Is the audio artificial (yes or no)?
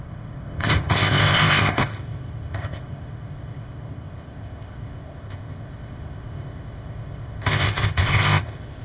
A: yes